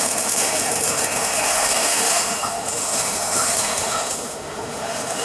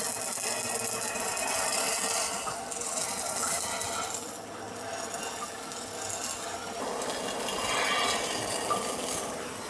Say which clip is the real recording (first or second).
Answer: second